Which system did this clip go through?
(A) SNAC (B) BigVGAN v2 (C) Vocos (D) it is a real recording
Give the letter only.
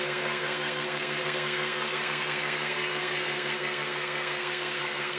A